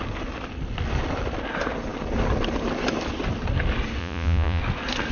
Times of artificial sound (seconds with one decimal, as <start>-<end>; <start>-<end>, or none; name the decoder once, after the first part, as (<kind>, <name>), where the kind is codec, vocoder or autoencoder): 4.0-4.6 (vocoder, Vocos)